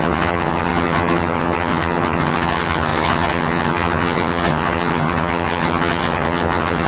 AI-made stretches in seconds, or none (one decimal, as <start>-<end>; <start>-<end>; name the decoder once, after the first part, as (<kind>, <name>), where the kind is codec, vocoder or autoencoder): 0.0-6.9 (vocoder, HiFi-GAN)